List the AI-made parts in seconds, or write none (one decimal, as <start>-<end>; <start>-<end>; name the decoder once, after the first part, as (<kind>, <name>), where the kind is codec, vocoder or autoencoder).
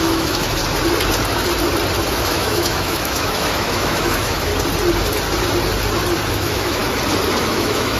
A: 0.0-0.6 (autoencoder, DAC-VAE); 2.1-4.5; 6.3-6.8; 7.4-8.0